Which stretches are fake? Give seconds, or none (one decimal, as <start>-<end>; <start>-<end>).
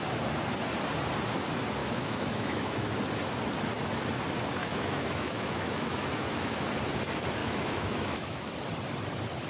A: 1.8-3.0; 4.6-6.7; 7.4-8.5